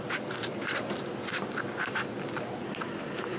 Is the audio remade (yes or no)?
no